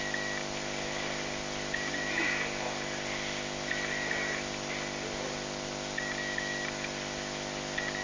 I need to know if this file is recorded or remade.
recorded